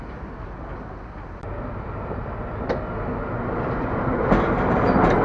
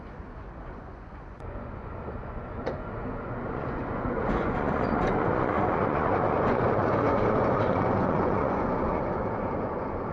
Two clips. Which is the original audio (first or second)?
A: first